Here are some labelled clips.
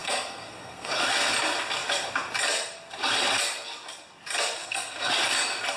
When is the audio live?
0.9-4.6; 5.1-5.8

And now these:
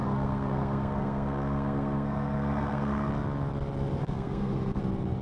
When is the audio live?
3.1-4.0; 4.8-5.2

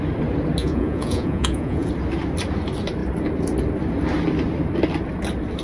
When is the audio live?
0.0-0.6; 1.9-5.6

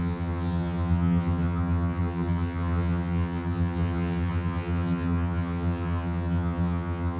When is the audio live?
none

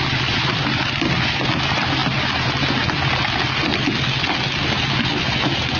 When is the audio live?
0.0-5.8

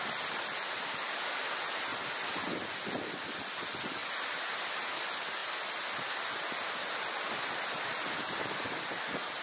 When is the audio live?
0.0-9.4

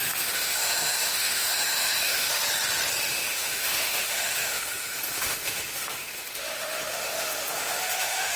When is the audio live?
2.4-3.1

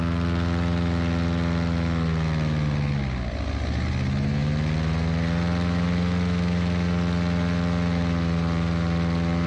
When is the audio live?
0.0-9.5